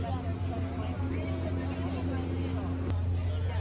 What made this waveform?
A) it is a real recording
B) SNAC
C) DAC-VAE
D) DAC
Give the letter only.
A